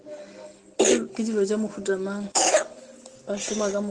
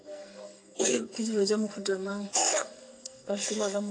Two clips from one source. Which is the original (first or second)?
first